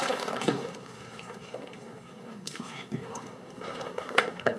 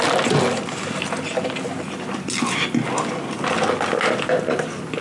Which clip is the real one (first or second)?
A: second